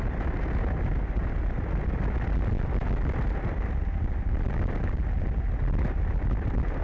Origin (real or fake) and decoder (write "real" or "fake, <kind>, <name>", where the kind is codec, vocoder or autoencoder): real